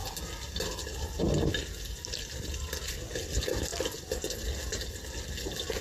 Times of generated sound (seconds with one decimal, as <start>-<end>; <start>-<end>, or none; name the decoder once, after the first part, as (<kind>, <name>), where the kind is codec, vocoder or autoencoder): none